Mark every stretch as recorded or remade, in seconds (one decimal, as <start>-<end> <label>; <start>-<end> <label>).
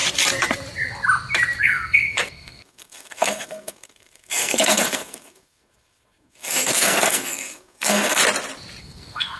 0.0-1.6 recorded; 1.6-8.2 remade; 8.2-8.8 recorded; 8.8-9.4 remade